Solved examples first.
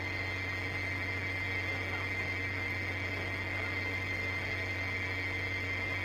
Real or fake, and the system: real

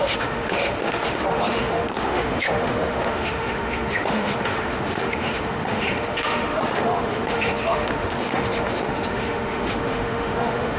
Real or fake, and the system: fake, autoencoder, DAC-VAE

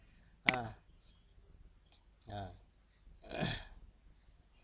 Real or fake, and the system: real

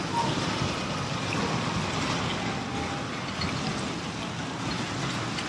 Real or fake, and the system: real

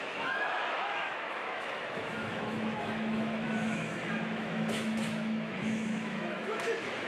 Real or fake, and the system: fake, autoencoder, DAC-VAE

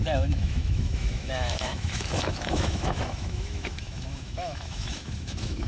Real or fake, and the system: fake, autoencoder, DAC-VAE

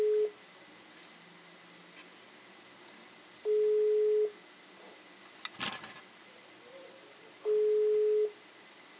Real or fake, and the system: real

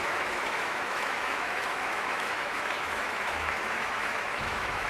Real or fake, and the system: fake, autoencoder, DAC-VAE